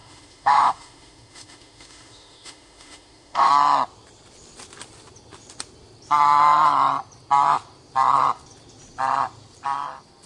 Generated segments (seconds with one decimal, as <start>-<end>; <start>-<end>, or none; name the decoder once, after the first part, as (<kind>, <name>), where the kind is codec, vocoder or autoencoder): 0.0-3.5 (autoencoder, DAC-VAE)